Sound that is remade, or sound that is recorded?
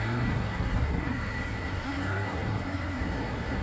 remade